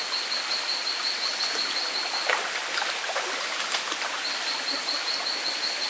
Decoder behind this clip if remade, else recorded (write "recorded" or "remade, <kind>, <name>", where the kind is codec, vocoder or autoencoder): recorded